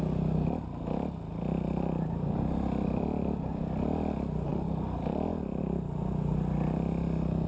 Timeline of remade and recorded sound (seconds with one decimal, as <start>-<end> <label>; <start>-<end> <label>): 0.0-7.5 recorded